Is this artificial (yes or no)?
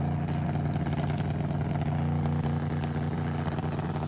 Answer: no